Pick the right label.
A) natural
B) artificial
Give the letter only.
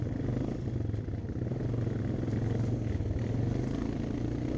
A